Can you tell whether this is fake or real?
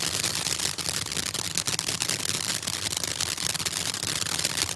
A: real